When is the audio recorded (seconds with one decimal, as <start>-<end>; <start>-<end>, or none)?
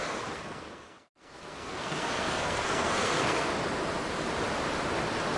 3.5-5.4